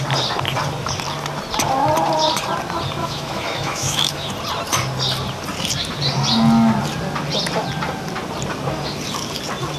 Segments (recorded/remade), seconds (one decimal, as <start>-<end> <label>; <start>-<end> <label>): 0.0-3.0 recorded; 3.0-4.3 remade; 4.3-9.8 recorded